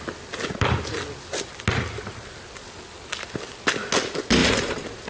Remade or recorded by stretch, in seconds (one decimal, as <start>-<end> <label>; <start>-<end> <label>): 0.0-4.4 recorded; 4.4-5.1 remade